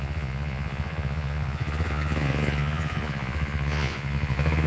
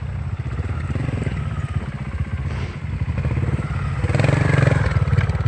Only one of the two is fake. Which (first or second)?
first